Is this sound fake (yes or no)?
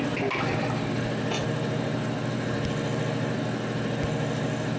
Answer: no